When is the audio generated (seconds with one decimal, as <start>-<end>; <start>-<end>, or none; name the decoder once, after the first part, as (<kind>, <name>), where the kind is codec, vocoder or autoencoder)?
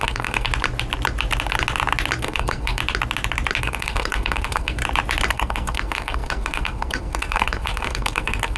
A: 0.0-0.5 (codec, SNAC); 2.2-2.8; 3.6-4.8; 5.3-8.6